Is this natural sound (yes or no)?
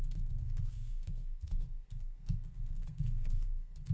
no